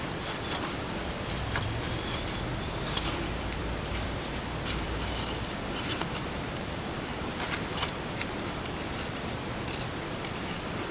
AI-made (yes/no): yes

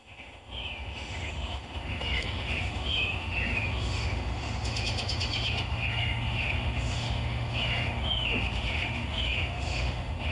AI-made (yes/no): yes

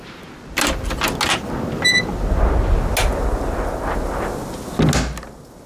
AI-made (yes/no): no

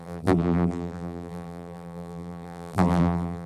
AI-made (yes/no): yes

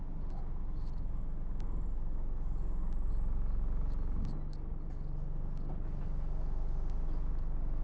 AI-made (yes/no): no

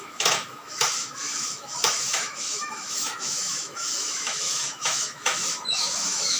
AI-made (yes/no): yes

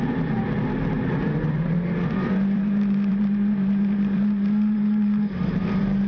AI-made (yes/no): yes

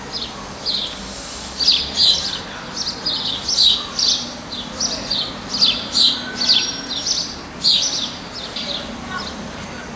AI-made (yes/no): no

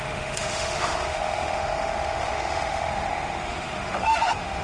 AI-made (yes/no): yes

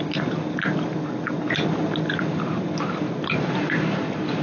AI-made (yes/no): no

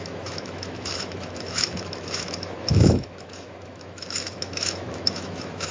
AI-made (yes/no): yes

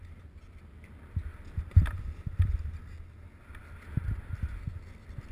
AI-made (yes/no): no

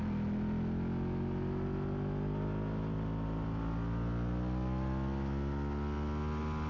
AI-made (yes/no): no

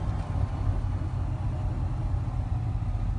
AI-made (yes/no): no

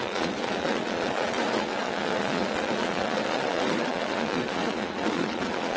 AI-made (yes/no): yes